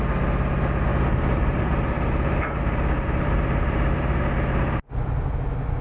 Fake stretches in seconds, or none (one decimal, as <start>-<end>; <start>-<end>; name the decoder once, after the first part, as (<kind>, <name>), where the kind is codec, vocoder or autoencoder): 0.9-4.2 (vocoder, BigVGAN v2)